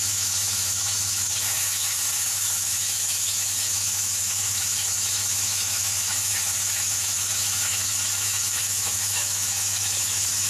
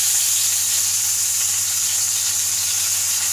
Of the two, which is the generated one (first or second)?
first